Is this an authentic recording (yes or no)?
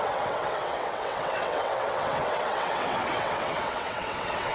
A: no